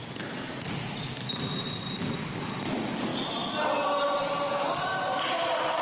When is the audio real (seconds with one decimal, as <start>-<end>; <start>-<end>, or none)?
1.1-5.8